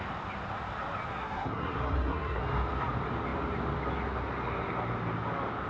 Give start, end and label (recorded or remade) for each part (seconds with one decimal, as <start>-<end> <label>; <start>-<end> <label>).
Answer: 0.0-1.1 recorded; 1.1-2.4 remade; 2.4-5.7 recorded